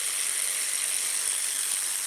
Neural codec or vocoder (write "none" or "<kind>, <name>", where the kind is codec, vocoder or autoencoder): none